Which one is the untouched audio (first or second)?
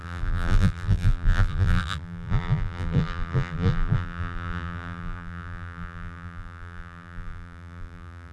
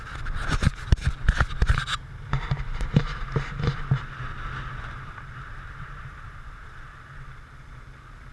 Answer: second